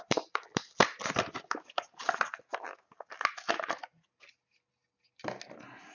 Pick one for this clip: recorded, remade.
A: recorded